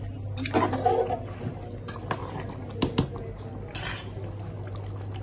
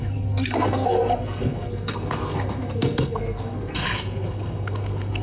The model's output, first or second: second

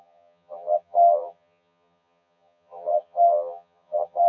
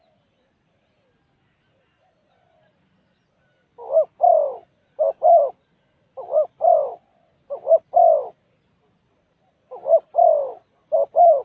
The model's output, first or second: first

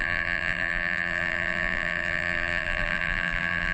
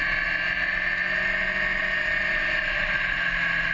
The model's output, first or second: first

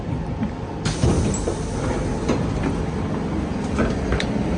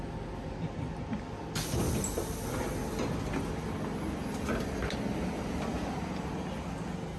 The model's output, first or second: first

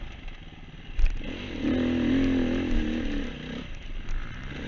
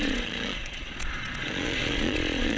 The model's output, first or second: second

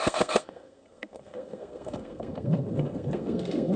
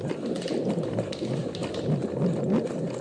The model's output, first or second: first